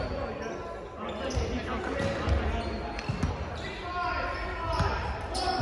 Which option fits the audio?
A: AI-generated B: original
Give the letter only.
B